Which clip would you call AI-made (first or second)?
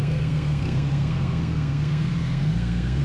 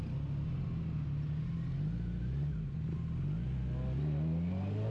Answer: first